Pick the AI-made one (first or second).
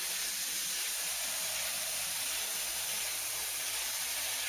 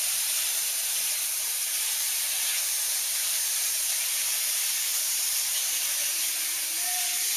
second